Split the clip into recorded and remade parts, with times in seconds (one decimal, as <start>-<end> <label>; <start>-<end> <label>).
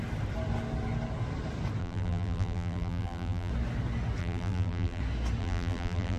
0.0-1.8 recorded; 1.8-3.5 remade; 3.5-4.2 recorded; 4.2-5.0 remade; 5.0-5.4 recorded; 5.4-6.2 remade